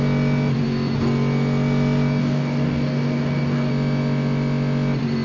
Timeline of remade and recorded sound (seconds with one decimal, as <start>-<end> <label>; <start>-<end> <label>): 0.0-2.2 recorded; 2.2-3.7 remade; 3.7-5.2 recorded